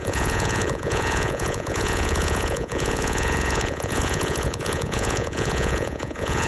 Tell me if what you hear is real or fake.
fake